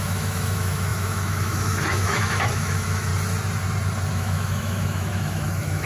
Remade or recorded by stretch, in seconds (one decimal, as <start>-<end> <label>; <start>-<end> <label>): 0.0-3.1 remade; 3.1-4.1 recorded; 4.1-5.9 remade